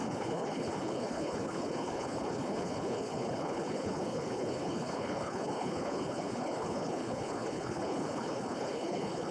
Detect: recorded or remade remade